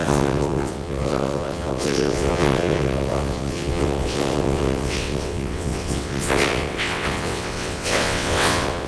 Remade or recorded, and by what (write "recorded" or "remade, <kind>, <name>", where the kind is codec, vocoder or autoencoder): remade, vocoder, WaveNeXt